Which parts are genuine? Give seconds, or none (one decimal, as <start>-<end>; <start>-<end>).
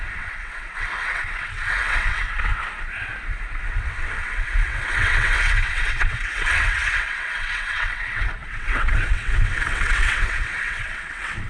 3.1-3.6